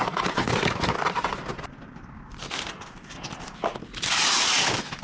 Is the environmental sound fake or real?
fake